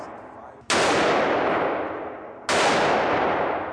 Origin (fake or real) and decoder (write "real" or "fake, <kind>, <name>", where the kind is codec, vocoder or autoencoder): real